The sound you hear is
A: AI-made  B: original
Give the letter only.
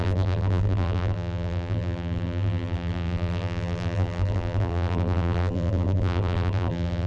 A